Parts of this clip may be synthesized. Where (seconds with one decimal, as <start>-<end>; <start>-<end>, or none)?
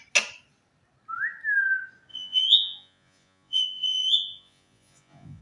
2.1-5.4